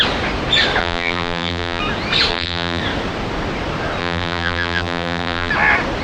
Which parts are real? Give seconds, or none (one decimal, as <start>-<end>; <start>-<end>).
0.0-0.8; 1.8-2.3; 2.8-4.0; 5.5-6.0